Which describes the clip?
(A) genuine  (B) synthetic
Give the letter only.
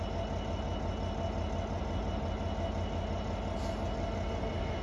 A